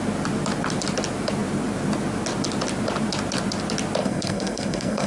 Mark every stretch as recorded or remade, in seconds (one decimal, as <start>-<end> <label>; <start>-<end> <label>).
0.0-4.0 recorded; 4.0-5.1 remade